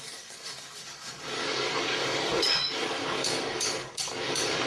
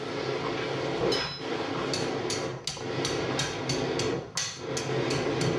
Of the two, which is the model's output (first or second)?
first